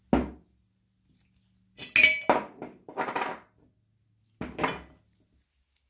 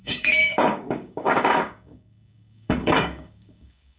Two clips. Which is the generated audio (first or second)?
second